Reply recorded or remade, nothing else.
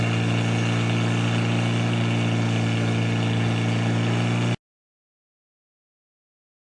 recorded